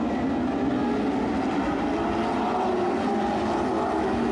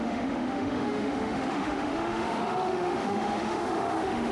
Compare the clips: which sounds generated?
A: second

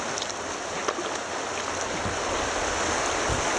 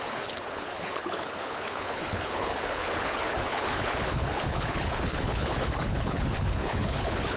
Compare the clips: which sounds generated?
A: second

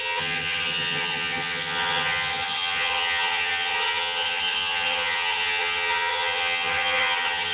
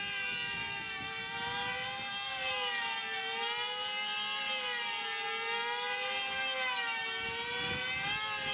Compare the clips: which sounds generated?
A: first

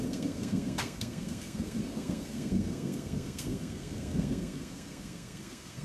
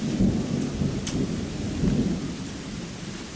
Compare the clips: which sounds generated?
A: first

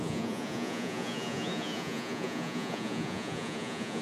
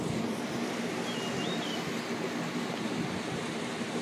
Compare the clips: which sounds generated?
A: first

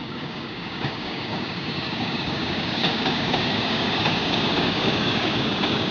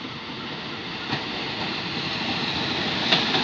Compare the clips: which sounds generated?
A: first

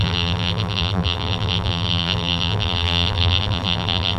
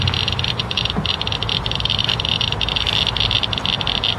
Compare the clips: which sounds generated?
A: first